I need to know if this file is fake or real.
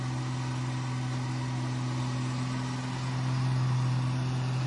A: real